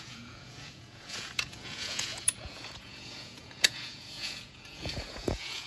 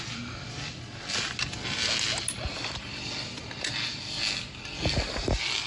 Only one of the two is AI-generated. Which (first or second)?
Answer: first